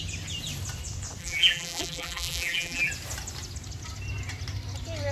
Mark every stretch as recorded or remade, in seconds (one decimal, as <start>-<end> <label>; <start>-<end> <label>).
0.0-1.2 recorded; 1.2-2.9 remade; 2.9-5.1 recorded